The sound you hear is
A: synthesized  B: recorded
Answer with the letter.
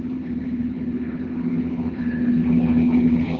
A